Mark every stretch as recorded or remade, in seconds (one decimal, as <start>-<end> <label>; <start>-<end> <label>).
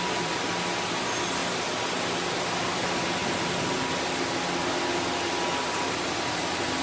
0.0-6.8 recorded